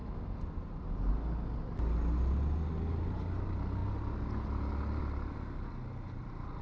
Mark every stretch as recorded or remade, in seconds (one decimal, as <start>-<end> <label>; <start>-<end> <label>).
0.0-6.6 recorded